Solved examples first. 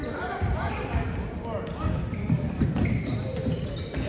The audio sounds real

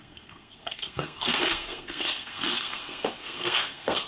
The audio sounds fake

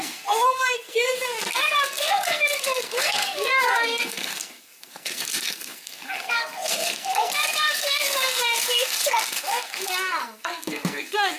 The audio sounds fake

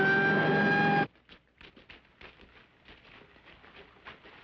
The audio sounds real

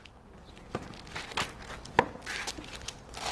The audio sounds real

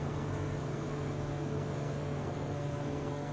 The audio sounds fake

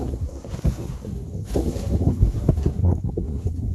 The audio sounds fake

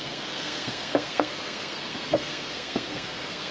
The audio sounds fake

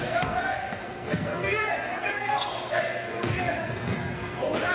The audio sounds fake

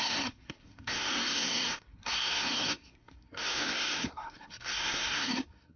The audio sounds fake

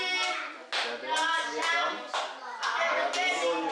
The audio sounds real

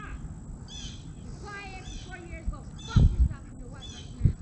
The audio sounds real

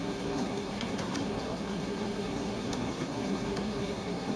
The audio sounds fake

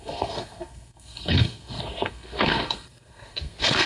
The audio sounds fake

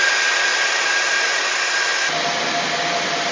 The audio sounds real